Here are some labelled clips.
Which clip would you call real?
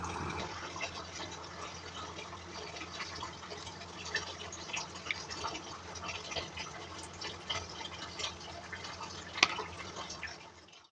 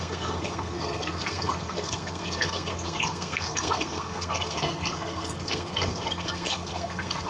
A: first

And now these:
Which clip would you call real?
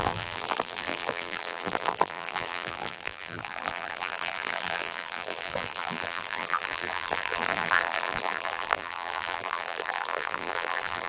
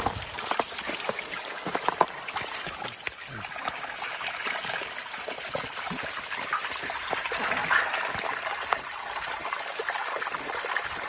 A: second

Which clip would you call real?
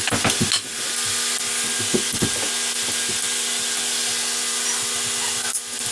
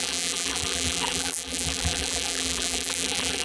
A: first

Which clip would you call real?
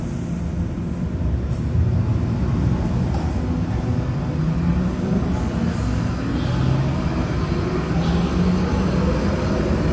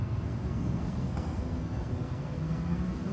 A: first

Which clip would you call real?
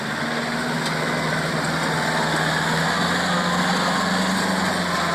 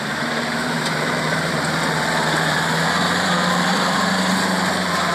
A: first